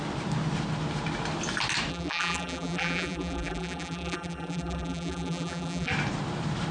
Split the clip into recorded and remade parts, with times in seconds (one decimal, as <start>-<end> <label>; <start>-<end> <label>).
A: 0.0-1.9 recorded; 1.9-5.9 remade; 5.9-6.7 recorded

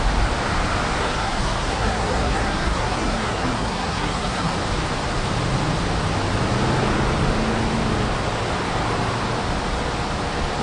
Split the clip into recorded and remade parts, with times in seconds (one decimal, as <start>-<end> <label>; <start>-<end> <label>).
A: 0.0-1.0 recorded; 1.0-4.5 remade; 4.5-10.6 recorded

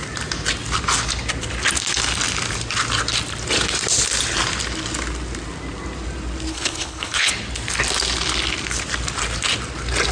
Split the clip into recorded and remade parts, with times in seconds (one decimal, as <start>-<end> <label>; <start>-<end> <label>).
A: 0.0-6.5 recorded; 6.5-7.3 remade; 7.3-10.1 recorded

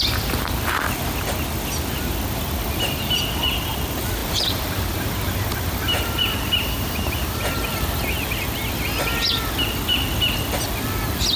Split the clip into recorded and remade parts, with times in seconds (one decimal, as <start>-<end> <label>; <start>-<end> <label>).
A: 0.0-4.2 recorded; 4.2-7.1 remade; 7.1-11.4 recorded

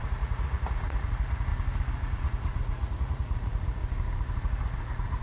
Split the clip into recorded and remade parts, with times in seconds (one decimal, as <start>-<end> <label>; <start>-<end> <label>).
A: 0.0-1.5 remade; 1.5-2.0 recorded; 2.0-3.8 remade; 3.8-4.3 recorded; 4.3-5.2 remade